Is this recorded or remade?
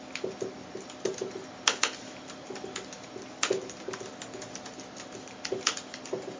recorded